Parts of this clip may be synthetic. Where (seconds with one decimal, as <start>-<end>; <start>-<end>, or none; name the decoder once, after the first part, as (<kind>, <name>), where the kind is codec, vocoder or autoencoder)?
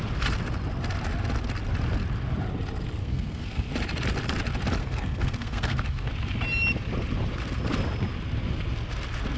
3.0-3.7 (codec, SNAC); 4.8-6.1